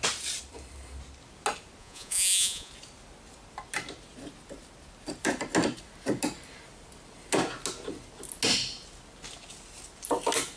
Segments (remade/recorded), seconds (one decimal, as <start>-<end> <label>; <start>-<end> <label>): 0.0-1.8 recorded; 1.8-2.7 remade; 2.7-10.6 recorded

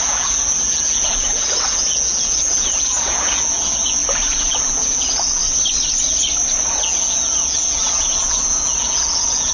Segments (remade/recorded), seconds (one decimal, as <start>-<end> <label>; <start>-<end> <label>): 0.0-5.4 remade; 5.4-6.7 recorded; 6.7-9.5 remade

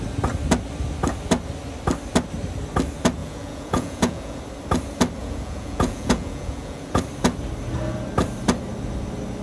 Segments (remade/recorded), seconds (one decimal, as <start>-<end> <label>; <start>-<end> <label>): 0.0-3.2 recorded; 3.2-4.4 remade; 4.4-5.2 recorded; 5.2-7.0 remade; 7.0-9.4 recorded

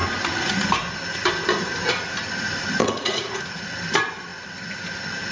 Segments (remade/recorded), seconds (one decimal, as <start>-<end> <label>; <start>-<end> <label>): 0.0-2.8 recorded; 2.8-3.6 remade; 3.6-5.3 recorded

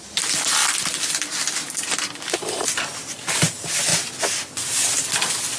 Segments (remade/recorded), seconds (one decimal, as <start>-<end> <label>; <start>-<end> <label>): 0.0-5.6 recorded